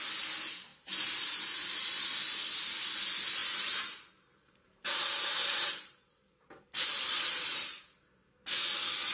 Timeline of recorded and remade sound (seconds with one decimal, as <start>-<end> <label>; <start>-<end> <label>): 0.0-3.4 recorded; 3.4-8.1 remade; 8.1-9.1 recorded